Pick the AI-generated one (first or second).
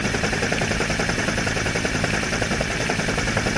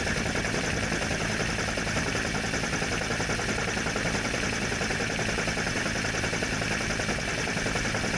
first